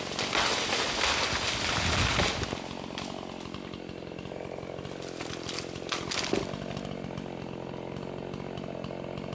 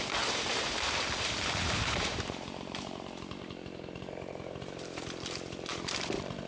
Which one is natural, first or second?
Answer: first